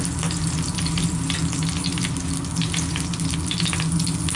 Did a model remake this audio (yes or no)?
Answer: no